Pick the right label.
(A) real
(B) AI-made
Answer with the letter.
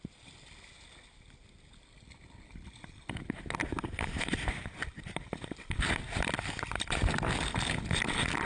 A